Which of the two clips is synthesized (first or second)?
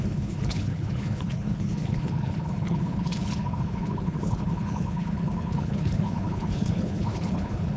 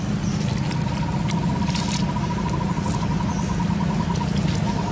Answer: first